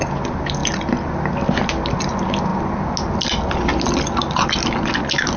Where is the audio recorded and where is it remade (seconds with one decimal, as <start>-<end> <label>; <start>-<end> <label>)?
0.0-5.4 recorded